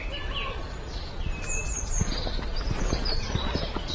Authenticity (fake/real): real